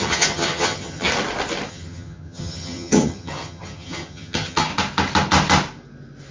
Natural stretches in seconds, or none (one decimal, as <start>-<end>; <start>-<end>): 1.1-1.7; 4.7-6.3